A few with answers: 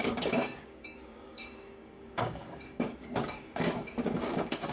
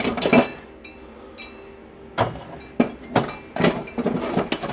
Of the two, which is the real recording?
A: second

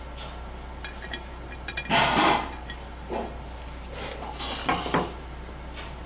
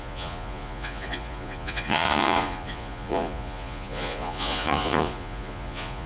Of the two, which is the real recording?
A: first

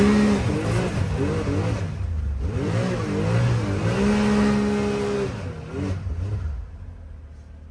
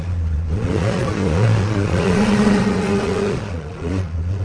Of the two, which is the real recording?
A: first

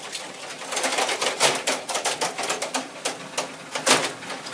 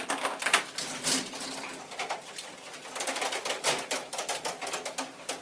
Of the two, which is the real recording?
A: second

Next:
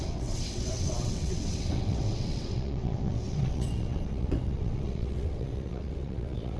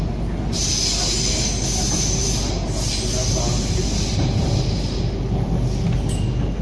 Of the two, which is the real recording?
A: second